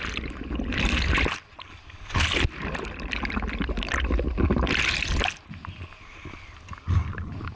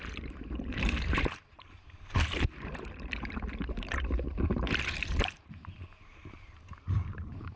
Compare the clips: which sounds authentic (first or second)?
first